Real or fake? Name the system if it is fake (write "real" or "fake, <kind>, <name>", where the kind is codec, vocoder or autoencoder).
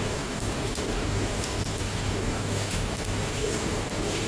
fake, codec, DAC